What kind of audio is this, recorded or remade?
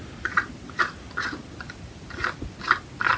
recorded